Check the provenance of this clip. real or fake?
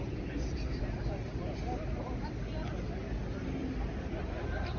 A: real